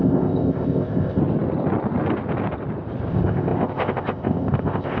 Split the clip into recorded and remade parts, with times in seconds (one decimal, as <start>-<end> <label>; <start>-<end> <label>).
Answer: 0.0-1.2 remade; 1.2-3.1 recorded; 3.1-5.0 remade